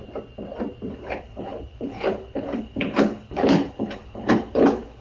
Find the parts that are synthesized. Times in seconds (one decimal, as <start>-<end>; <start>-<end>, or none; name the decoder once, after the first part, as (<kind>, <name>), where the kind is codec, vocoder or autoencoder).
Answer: 0.9-5.0 (codec, HILCodec)